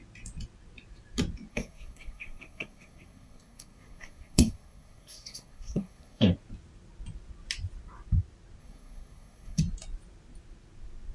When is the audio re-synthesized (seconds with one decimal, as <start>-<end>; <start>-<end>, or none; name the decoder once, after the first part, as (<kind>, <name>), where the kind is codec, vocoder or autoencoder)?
1.5-6.3 (codec, SNAC); 8.6-9.6